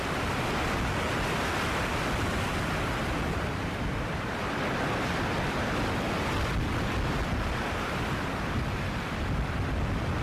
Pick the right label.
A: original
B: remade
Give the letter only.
A